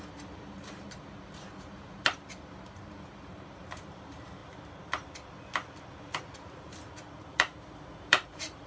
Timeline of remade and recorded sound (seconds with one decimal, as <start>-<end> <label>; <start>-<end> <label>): 0.0-4.4 remade; 4.4-6.2 recorded; 6.2-7.5 remade; 7.5-8.1 recorded; 8.1-8.7 remade